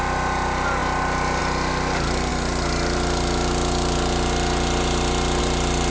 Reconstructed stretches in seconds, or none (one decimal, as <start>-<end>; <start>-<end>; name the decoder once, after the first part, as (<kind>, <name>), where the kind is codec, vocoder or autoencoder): none